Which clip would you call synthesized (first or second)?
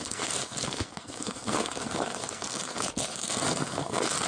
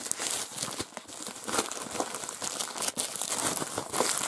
first